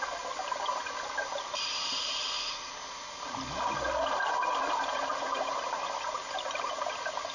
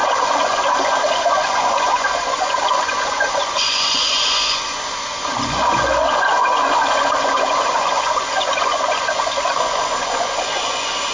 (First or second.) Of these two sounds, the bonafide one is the first